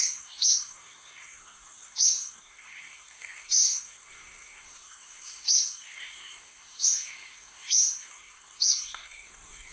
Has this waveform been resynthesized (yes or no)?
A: yes